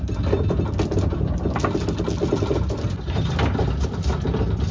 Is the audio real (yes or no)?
yes